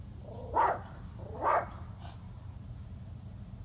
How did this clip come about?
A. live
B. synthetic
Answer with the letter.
B